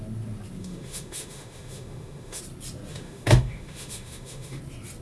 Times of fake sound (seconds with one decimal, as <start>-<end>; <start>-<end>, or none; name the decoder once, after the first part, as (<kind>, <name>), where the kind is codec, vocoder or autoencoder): 0.6-2.4 (autoencoder, DAC-VAE); 2.9-4.6